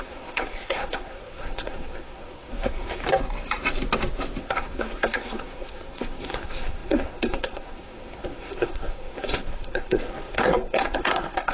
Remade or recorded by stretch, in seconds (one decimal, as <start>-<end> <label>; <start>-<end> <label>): 0.0-3.0 remade; 3.0-4.4 recorded; 4.4-11.5 remade